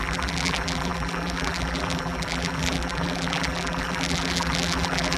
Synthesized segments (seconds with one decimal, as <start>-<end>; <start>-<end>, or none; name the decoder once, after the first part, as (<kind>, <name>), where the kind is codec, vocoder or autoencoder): 0.0-5.2 (vocoder, BigVGAN v2)